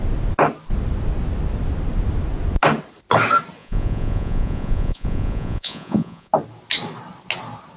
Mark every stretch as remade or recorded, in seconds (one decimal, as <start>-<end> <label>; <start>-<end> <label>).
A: 0.0-3.6 recorded; 3.6-6.3 remade; 6.3-7.8 recorded